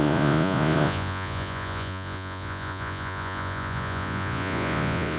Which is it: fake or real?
fake